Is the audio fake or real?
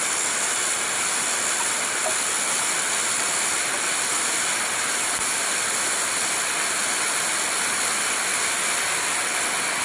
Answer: real